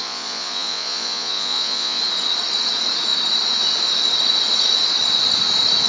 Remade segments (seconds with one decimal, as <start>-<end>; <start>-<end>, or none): 0.0-2.0

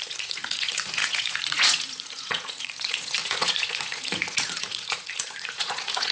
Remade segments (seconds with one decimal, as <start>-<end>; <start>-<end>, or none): 0.0-6.1

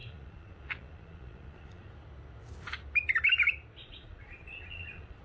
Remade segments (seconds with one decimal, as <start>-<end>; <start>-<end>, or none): 0.0-1.9; 3.8-5.2

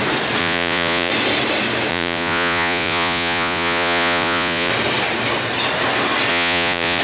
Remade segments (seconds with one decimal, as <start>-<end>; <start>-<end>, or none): 0.4-1.1; 1.9-4.7; 6.3-7.0

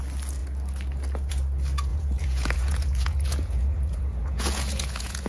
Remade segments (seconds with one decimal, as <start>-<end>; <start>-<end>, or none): 1.9-5.3